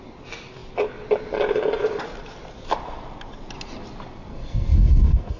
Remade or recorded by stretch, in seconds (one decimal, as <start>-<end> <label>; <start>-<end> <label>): 0.0-4.3 recorded; 4.3-5.4 remade